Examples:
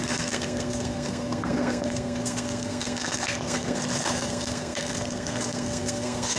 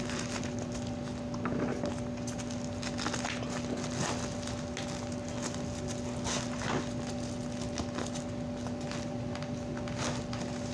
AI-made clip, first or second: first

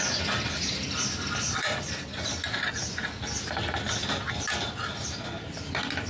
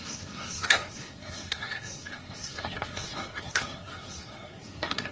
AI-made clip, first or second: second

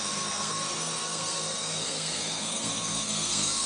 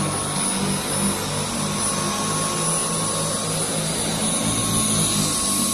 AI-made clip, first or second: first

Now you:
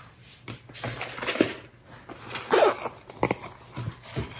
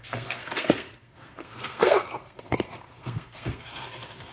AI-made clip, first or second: second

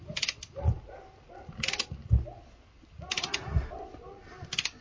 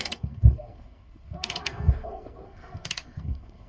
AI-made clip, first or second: second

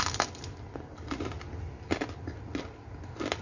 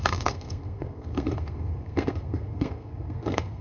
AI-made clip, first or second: second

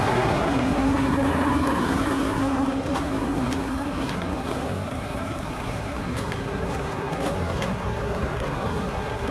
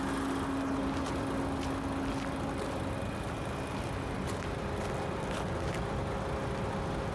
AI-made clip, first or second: first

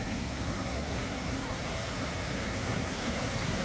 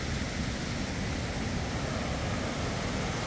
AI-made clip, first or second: first